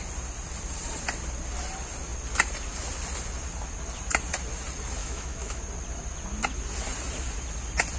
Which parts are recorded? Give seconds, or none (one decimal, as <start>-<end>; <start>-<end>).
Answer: 0.0-5.0; 5.6-8.0